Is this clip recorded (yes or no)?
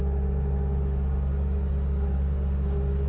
yes